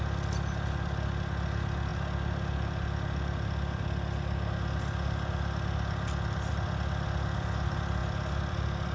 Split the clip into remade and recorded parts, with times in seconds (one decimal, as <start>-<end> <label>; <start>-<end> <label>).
0.0-8.9 recorded